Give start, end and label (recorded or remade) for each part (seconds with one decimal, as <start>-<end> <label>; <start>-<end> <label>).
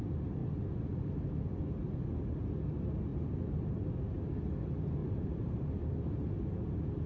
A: 0.0-0.4 recorded; 0.4-0.9 remade; 0.9-3.1 recorded; 3.1-3.7 remade; 3.7-5.0 recorded; 5.0-5.7 remade; 5.7-7.1 recorded